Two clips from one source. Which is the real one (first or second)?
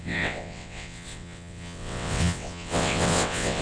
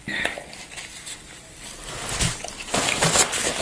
second